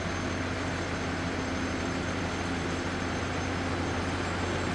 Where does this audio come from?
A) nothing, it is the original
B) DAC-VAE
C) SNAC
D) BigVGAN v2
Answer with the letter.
A